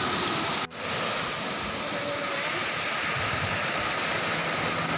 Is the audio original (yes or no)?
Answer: yes